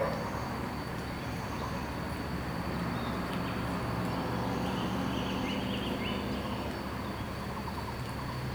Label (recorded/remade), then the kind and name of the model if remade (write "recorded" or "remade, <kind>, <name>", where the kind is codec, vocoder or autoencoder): recorded